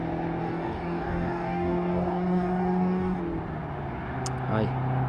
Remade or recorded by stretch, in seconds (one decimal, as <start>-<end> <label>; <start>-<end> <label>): 0.0-0.4 recorded; 0.4-3.2 remade; 3.2-5.1 recorded